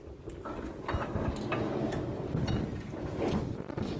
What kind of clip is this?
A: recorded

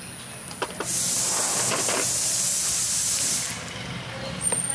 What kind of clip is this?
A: recorded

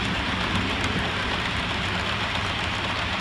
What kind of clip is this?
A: remade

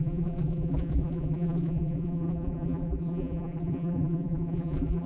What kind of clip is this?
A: remade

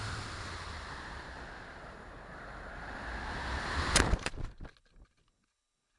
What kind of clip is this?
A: recorded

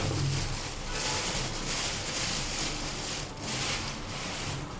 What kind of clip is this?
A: recorded